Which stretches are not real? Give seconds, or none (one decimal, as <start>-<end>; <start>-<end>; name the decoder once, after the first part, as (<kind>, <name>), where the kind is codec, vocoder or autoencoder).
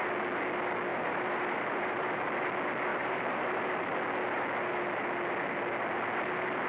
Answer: 0.9-2.3 (vocoder, BigVGAN v2); 2.9-3.6